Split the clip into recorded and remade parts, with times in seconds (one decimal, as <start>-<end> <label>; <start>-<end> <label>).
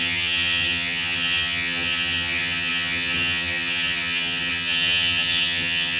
0.0-6.0 remade